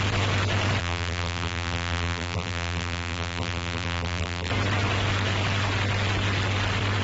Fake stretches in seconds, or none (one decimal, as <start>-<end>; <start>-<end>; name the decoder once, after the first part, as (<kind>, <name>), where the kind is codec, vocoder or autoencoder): 0.8-4.5 (vocoder, BigVGAN v2)